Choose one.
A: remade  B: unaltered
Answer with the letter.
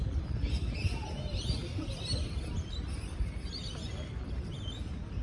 B